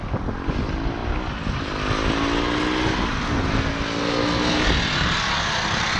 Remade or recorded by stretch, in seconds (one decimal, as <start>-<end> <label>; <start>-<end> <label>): 0.0-6.0 recorded